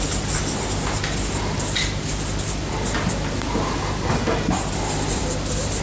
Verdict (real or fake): real